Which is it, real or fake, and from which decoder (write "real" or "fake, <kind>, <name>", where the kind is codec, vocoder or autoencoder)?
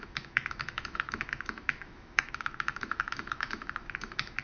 fake, autoencoder, DAC-VAE